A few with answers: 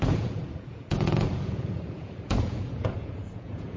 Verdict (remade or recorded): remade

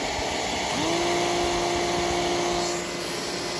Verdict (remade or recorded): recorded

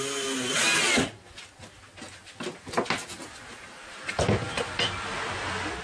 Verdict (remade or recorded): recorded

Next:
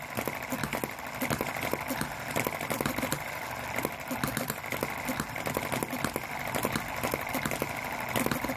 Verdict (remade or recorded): recorded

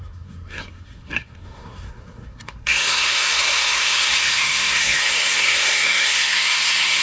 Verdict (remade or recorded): remade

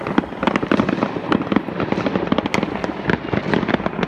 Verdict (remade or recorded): recorded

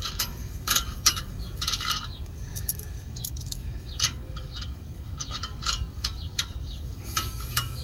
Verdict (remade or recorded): remade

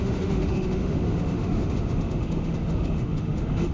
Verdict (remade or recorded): remade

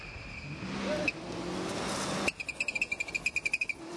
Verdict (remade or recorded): recorded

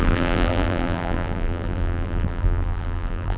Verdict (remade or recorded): remade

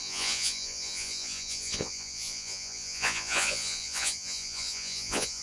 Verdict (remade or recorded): remade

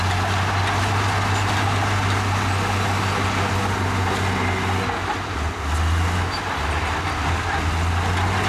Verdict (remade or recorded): recorded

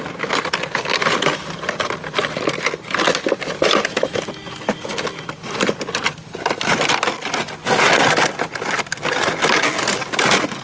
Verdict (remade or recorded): recorded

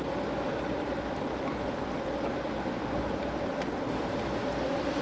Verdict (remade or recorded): recorded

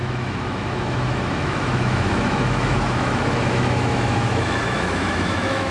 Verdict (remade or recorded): remade